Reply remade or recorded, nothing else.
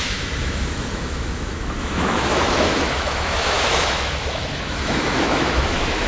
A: remade